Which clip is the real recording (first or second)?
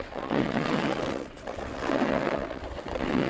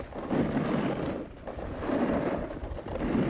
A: second